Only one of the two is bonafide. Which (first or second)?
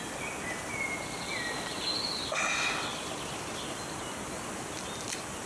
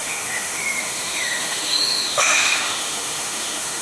first